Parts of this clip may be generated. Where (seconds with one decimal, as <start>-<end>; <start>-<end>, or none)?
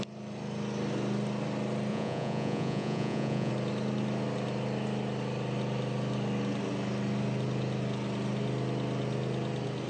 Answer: 1.9-3.5